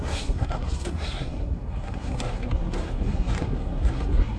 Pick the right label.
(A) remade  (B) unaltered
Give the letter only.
A